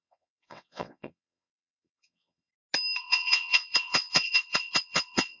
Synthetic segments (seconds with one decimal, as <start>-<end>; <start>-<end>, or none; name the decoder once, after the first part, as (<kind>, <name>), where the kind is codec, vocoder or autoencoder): 0.0-2.5 (vocoder, WaveNeXt); 3.0-5.4